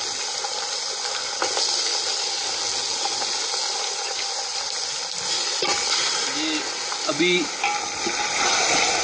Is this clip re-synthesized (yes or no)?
no